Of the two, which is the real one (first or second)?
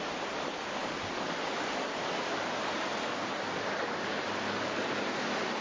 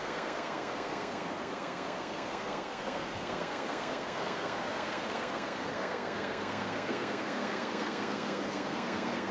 first